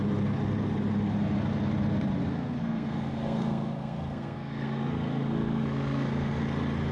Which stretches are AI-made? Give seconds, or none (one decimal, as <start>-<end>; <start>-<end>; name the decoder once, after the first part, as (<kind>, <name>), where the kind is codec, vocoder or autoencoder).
2.3-6.4 (codec, SNAC)